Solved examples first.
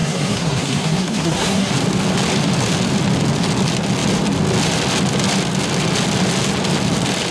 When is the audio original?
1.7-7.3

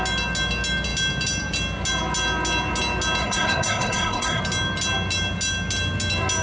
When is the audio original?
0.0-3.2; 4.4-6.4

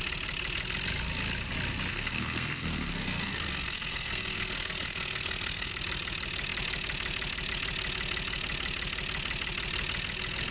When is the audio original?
0.0-1.9; 5.7-10.5

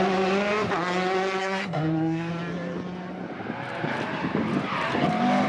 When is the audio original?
0.0-1.4; 2.3-5.5

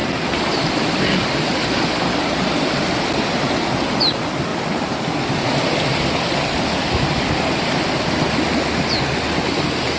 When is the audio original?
0.0-10.0